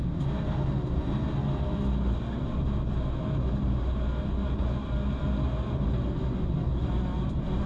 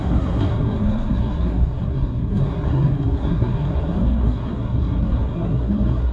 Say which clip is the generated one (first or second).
second